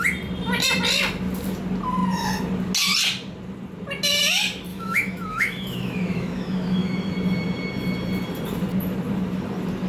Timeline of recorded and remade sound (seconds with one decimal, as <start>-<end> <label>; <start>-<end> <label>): 0.0-4.7 recorded; 4.7-7.1 remade; 7.1-9.9 recorded